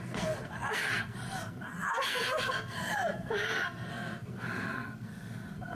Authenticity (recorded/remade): remade